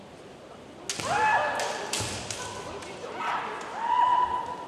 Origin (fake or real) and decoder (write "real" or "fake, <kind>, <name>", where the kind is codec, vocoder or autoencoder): real